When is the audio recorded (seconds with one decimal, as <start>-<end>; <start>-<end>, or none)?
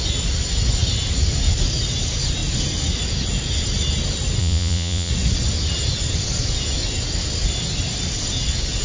0.0-4.4; 5.1-8.8